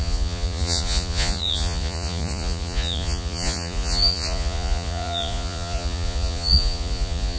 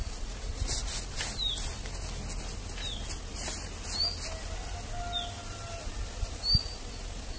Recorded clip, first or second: second